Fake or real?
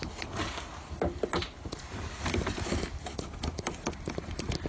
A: real